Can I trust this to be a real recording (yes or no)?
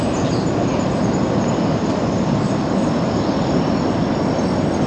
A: yes